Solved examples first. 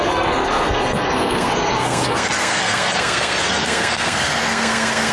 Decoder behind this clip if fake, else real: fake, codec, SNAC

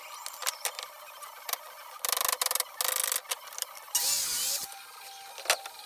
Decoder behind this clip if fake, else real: real